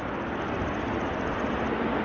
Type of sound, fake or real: real